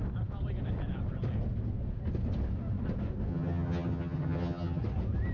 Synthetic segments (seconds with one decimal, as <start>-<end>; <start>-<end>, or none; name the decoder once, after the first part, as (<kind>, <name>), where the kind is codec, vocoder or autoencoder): 3.3-4.8 (vocoder, HiFi-GAN)